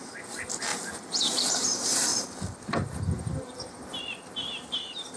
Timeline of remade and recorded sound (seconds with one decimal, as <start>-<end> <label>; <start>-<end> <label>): 0.0-0.7 remade; 0.7-1.4 recorded; 1.4-5.2 remade